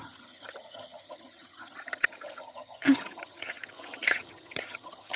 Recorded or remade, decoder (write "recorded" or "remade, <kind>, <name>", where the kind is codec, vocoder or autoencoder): remade, vocoder, HiFi-GAN